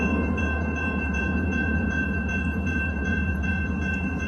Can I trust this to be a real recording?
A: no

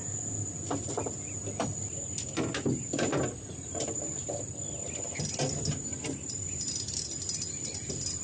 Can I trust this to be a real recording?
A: yes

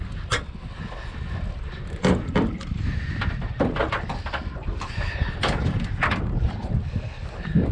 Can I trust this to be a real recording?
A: yes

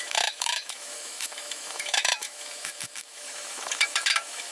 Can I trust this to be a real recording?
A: no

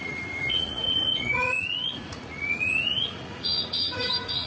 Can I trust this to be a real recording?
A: no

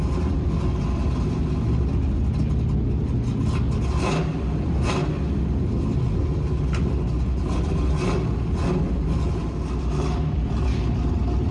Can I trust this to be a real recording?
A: yes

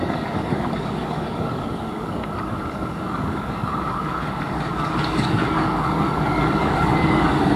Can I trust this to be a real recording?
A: no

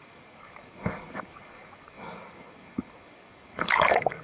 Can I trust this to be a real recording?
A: no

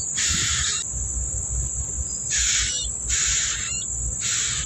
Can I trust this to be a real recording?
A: yes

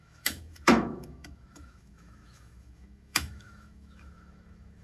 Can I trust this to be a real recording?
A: no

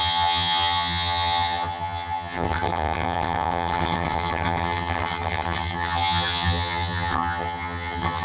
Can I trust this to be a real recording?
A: no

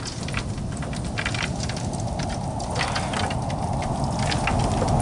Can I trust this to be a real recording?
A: yes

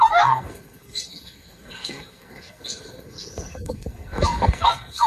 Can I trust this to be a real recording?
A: no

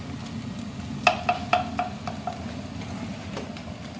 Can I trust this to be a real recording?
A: yes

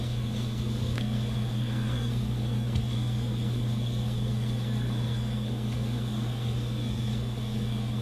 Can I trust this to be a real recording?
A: no